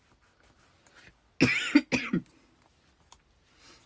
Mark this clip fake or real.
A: real